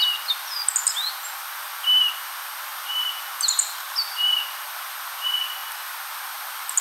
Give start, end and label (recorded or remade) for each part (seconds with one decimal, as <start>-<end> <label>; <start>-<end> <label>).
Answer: 0.0-6.8 recorded